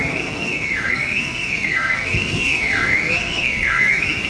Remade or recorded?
remade